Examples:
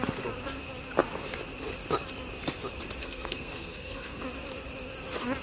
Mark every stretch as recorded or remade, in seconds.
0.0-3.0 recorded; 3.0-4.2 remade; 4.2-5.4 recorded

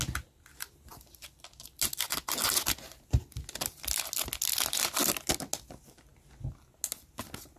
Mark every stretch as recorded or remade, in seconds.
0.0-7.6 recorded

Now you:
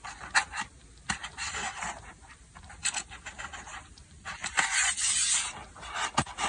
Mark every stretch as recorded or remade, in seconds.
0.0-6.5 recorded

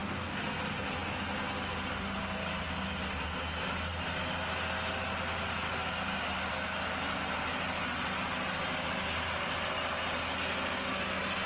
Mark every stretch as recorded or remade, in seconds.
0.0-0.6 remade; 0.6-11.5 recorded